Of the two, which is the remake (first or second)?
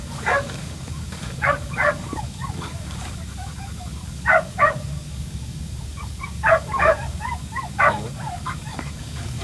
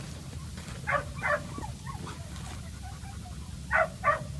first